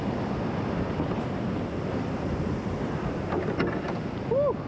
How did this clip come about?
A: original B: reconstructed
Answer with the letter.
A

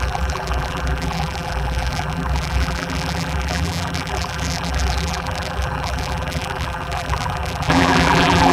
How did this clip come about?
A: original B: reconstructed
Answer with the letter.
B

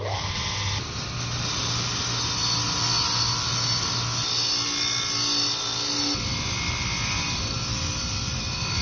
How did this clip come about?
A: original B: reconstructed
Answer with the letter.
A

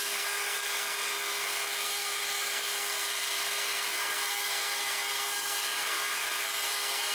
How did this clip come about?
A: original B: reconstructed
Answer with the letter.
B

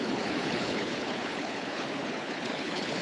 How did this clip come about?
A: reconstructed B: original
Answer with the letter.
A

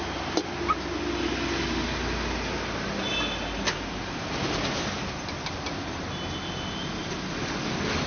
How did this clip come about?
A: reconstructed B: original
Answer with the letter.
B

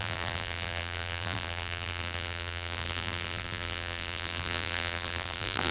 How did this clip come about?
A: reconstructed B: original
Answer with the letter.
A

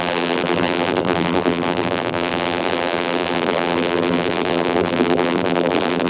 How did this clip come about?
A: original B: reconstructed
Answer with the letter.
B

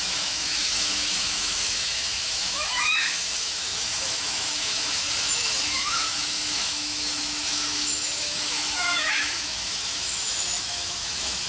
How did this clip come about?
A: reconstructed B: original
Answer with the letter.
A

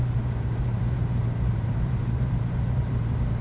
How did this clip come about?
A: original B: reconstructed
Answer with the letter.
B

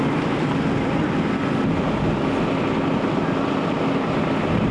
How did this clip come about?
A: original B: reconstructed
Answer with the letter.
A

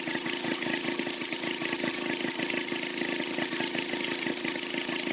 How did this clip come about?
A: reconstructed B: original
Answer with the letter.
B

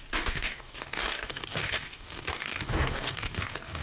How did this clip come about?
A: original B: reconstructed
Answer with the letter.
B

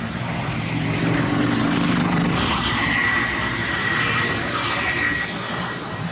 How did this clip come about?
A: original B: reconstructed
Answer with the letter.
B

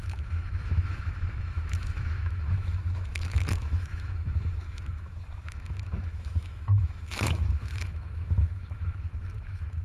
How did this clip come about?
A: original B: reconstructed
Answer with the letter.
B